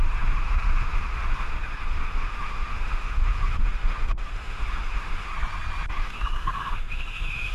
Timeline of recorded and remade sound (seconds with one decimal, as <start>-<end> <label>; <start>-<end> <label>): 0.0-5.3 remade; 5.3-5.9 recorded; 5.9-7.5 remade